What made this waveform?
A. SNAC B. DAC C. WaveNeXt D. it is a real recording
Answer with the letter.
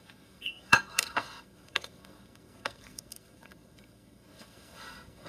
A